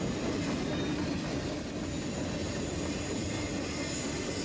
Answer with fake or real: real